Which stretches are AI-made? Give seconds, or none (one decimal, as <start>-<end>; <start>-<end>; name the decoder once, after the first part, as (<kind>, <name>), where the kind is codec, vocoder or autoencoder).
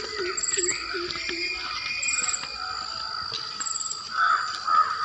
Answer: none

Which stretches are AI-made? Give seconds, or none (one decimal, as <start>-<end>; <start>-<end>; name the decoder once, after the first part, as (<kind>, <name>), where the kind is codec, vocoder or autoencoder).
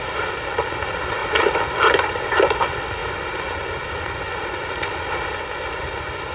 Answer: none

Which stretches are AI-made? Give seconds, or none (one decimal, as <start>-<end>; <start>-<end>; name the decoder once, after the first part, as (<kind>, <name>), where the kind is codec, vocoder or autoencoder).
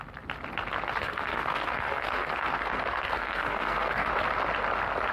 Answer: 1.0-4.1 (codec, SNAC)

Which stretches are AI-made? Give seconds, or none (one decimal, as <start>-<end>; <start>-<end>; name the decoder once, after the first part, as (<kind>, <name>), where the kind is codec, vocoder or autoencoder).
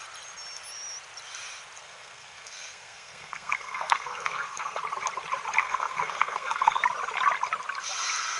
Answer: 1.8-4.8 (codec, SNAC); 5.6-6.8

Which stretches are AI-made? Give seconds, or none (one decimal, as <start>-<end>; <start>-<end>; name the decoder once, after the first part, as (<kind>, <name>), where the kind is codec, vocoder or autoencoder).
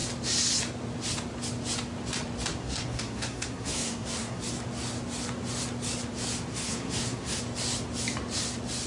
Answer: 2.6-4.4 (codec, SNAC); 6.5-7.4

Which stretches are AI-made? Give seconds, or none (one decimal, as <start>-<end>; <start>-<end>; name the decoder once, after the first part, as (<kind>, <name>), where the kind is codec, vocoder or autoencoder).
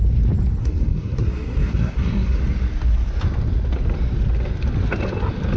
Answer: 0.6-2.4 (codec, SNAC)